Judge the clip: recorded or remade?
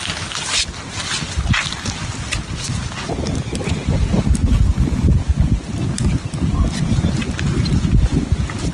recorded